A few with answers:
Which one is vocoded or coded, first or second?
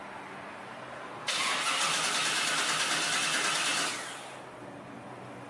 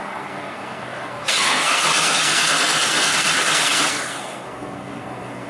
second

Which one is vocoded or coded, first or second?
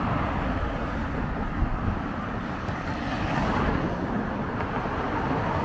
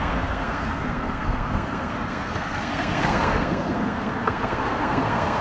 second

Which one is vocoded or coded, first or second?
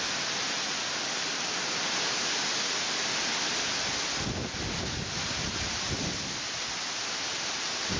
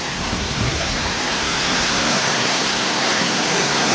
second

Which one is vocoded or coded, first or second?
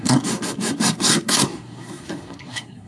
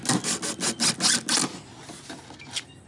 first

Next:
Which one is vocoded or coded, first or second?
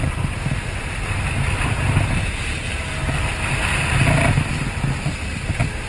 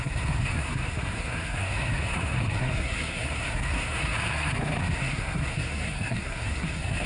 second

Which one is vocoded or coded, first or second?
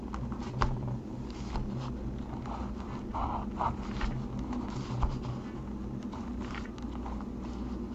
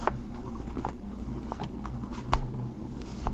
second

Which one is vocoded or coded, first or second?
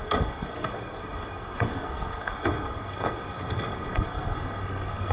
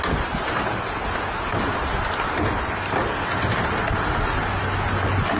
first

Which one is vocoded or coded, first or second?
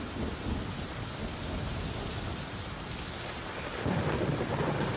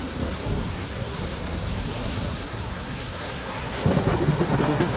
second